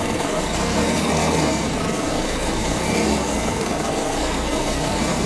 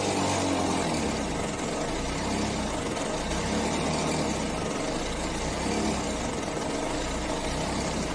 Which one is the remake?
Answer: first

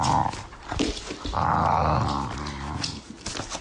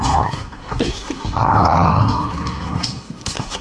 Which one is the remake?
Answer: second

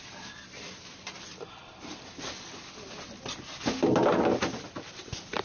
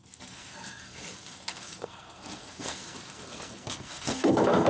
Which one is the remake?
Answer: second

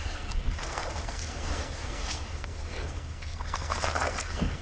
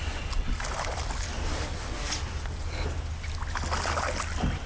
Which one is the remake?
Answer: first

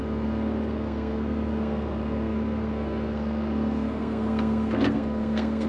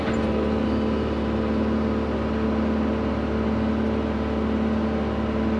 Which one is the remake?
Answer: first